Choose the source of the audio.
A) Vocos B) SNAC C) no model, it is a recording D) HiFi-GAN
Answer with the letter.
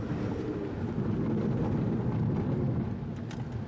C